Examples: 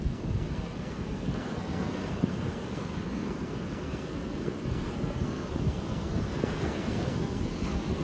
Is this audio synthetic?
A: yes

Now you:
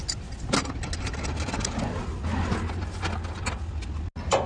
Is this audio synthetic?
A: no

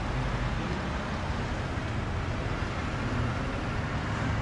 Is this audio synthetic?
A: no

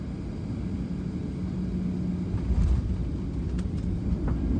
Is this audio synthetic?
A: no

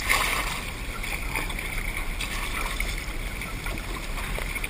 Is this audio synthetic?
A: no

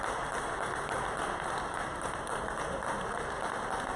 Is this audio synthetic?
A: no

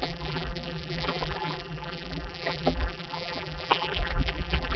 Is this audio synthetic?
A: yes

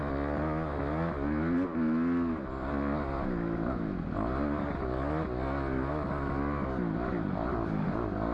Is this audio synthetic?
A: no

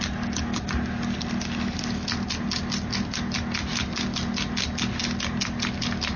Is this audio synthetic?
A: no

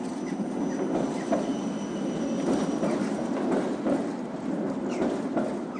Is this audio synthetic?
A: no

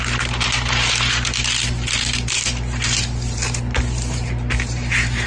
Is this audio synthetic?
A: no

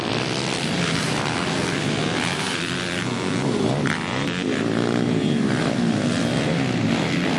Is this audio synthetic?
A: no